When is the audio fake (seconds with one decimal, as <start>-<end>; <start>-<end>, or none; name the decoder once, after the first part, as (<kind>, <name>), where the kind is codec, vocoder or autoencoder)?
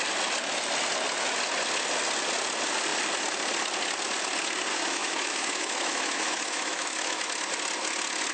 4.7-7.5 (autoencoder, DAC-VAE)